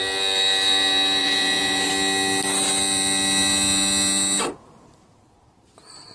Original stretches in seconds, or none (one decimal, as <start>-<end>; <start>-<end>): 0.0-1.2; 1.9-6.1